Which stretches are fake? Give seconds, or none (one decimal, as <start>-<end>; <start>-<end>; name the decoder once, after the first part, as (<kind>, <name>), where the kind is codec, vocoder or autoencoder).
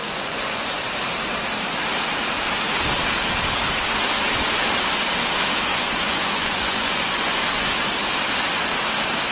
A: 0.0-0.8 (vocoder, Vocos); 5.7-7.7